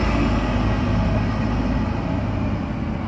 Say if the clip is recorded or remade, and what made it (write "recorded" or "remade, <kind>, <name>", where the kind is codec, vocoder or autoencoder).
recorded